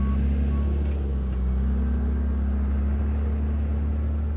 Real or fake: real